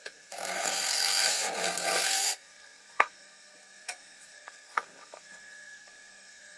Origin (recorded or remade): remade